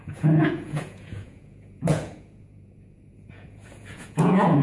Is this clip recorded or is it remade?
remade